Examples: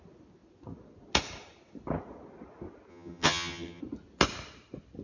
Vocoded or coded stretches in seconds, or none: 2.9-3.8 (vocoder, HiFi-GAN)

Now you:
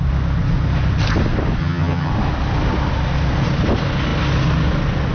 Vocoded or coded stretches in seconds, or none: 1.6-2.1 (vocoder, HiFi-GAN)

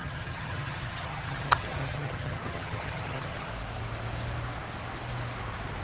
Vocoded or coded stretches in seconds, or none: 0.0-3.5 (vocoder, HiFi-GAN)

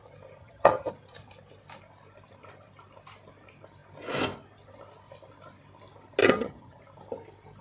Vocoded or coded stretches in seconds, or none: 0.4-0.9 (vocoder, HiFi-GAN); 6.2-6.8

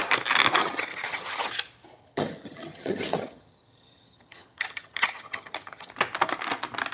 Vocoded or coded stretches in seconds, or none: 0.6-1.5 (vocoder, HiFi-GAN); 2.0-5.9